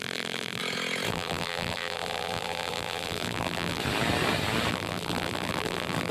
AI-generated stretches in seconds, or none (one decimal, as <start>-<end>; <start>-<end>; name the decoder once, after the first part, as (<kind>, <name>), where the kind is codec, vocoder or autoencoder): 0.0-0.6 (vocoder, BigVGAN v2); 1.1-3.8; 4.7-6.1